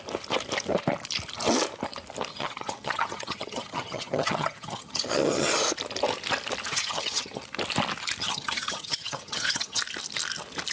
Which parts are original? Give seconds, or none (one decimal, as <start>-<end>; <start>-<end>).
0.0-2.3; 5.5-6.7; 7.4-8.2; 9.8-10.7